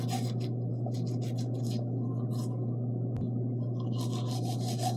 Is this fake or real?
real